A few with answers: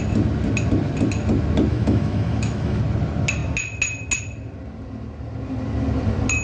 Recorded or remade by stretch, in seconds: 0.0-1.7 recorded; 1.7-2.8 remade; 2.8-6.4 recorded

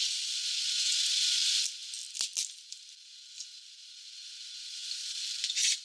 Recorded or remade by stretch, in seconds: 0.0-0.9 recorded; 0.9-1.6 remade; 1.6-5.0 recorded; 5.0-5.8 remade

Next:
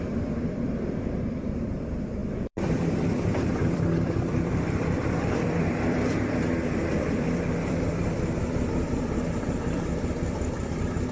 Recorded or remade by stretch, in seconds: 0.0-11.1 remade